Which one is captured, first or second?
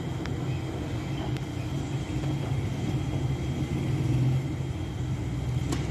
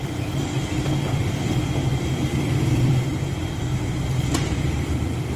first